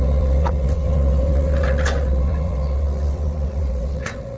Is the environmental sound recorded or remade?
remade